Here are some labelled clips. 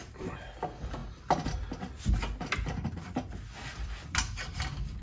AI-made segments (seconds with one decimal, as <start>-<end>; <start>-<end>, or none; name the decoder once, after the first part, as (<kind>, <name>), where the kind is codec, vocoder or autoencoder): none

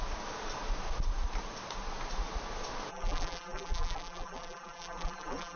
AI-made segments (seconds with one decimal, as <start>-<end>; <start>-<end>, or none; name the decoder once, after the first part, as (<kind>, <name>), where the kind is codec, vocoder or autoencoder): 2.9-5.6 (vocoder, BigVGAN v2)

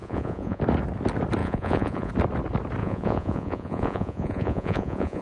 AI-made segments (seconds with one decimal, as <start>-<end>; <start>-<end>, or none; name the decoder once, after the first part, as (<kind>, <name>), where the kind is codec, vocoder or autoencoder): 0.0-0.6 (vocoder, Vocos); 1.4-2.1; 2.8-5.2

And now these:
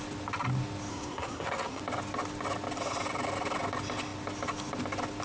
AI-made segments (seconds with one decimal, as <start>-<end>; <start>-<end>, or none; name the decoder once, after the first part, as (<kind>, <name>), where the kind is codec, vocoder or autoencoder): 0.9-1.8 (codec, SNAC)

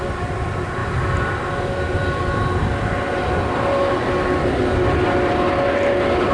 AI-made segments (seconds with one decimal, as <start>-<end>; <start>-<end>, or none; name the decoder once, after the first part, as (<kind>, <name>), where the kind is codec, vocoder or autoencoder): none